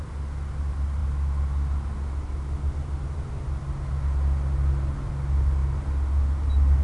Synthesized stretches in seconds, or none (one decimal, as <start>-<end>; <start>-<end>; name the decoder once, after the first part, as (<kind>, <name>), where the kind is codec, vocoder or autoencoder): none